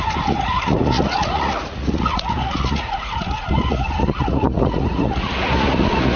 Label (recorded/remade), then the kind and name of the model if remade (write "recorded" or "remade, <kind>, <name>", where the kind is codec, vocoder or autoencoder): remade, vocoder, Vocos